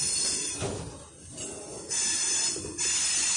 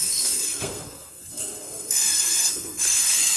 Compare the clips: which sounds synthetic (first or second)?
second